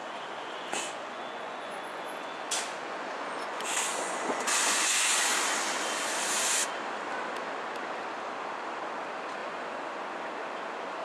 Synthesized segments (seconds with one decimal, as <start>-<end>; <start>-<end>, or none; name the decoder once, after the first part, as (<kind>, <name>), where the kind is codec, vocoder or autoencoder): 0.0-5.1 (vocoder, Vocos); 9.4-10.2